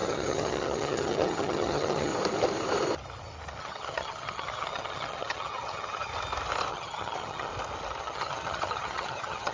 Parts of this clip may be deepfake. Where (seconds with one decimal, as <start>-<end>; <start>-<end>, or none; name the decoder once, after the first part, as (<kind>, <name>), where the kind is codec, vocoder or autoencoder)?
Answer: 0.0-2.1 (vocoder, HiFi-GAN); 3.6-6.1; 6.7-7.5; 8.0-9.5

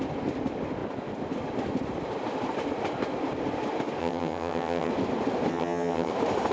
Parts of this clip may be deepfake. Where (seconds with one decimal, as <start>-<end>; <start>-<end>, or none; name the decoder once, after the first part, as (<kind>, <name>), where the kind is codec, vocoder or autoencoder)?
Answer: 4.0-4.9 (vocoder, HiFi-GAN); 5.5-6.1

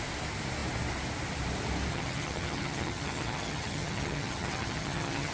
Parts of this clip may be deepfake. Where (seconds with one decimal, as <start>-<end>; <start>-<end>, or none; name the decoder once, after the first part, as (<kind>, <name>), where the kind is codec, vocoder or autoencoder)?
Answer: 1.9-5.3 (vocoder, HiFi-GAN)

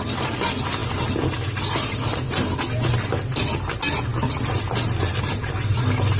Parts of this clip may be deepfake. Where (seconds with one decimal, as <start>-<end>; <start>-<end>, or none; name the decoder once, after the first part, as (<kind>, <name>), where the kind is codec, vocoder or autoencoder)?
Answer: none